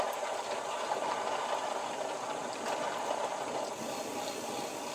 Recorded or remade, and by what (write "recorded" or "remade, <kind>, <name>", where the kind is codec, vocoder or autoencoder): recorded